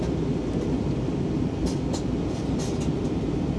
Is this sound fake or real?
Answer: real